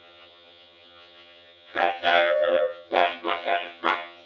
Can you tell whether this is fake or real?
fake